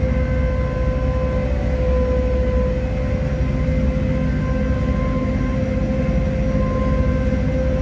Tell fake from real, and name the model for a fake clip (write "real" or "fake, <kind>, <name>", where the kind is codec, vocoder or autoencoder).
real